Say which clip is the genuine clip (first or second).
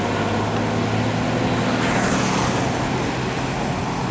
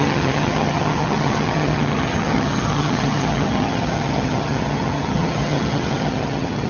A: first